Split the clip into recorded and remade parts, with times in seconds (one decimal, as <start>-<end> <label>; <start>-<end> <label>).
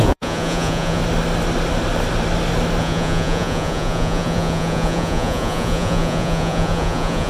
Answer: 0.0-1.0 remade; 1.0-2.8 recorded; 2.8-7.3 remade